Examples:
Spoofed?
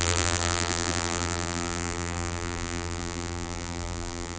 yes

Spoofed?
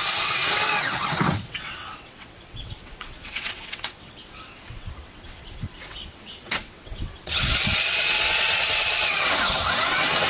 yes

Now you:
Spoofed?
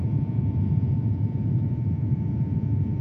yes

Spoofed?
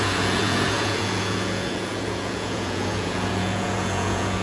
yes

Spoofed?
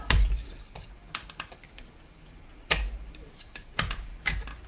no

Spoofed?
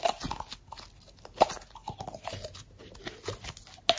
no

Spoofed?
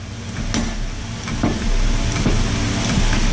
no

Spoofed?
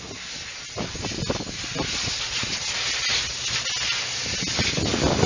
no